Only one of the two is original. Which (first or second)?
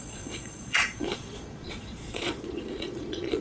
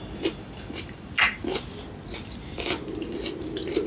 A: second